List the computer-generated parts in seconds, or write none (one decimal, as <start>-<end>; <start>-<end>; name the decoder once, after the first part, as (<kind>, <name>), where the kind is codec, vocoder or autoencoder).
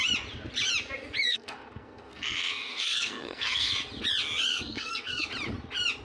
1.3-3.7 (codec, SNAC); 4.5-5.3